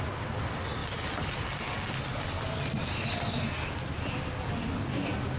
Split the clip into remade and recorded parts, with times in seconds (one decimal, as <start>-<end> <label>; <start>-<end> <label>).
0.0-5.4 recorded